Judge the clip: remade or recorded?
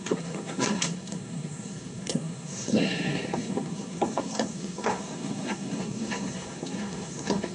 remade